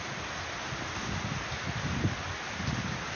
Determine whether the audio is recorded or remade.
recorded